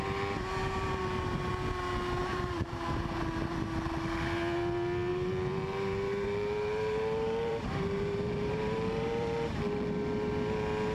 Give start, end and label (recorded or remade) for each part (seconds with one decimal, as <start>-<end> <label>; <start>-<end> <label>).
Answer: 0.0-0.6 recorded; 0.6-1.5 remade; 1.5-2.2 recorded; 2.2-3.2 remade; 3.2-5.1 recorded; 5.1-9.9 remade; 9.9-10.9 recorded